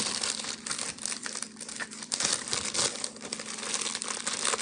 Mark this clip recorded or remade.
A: recorded